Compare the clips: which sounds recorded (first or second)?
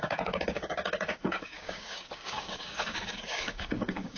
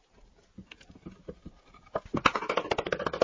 second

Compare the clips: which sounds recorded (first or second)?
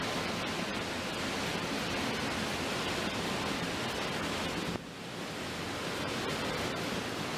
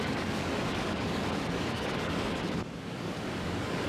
first